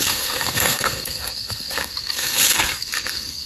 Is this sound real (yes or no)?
no